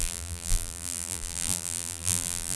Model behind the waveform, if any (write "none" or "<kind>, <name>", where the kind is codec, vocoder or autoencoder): vocoder, BigVGAN v2